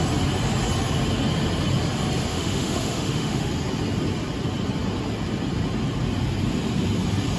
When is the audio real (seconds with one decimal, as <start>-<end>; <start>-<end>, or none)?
0.0-2.3; 3.5-7.4